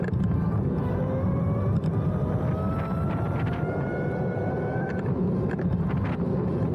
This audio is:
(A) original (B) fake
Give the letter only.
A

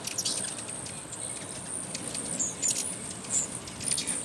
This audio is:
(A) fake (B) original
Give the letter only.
B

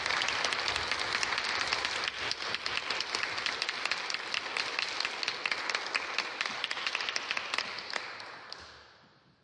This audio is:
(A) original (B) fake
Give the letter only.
A